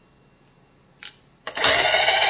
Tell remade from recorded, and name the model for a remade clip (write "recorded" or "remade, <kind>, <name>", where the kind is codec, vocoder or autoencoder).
recorded